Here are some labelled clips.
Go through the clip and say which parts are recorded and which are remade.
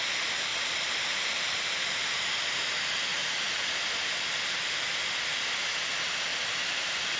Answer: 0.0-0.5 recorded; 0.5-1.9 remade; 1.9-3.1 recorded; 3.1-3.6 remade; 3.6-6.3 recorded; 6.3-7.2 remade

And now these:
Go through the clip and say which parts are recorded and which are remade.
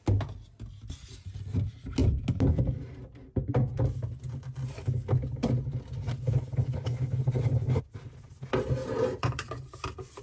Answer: 0.0-8.8 recorded; 8.8-10.2 remade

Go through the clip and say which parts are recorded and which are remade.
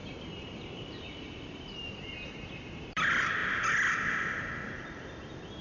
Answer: 0.0-3.4 remade; 3.4-4.1 recorded; 4.1-5.6 remade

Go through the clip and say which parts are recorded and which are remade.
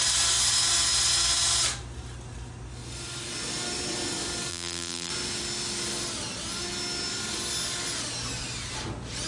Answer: 0.0-4.5 recorded; 4.5-5.1 remade; 5.1-9.3 recorded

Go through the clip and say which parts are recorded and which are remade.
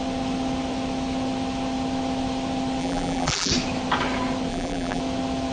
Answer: 0.0-2.8 recorded; 2.8-3.5 remade; 3.5-4.5 recorded; 4.5-5.0 remade; 5.0-5.5 recorded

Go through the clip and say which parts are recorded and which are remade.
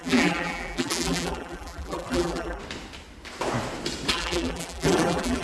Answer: 0.0-2.6 remade; 2.6-4.1 recorded; 4.1-5.4 remade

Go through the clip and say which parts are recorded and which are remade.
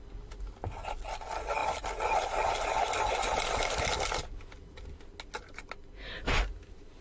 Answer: 0.0-7.0 recorded